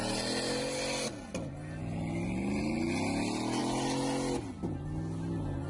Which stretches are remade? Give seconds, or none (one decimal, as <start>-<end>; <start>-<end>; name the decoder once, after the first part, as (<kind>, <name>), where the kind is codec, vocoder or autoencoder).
none